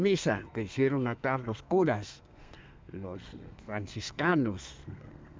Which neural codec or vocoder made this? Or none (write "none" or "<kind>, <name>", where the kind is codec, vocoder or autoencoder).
codec, SNAC